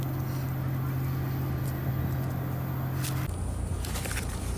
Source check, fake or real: real